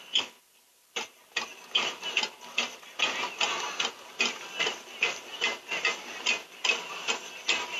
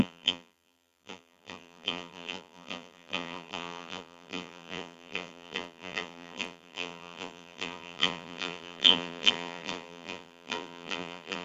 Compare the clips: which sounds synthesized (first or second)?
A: second